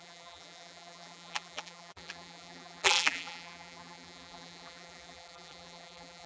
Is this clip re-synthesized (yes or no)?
yes